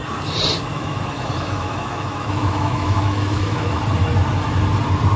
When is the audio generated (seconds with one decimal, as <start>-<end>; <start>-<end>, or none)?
0.7-3.8